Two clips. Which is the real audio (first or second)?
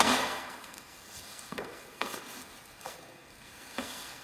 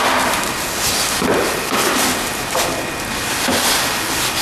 second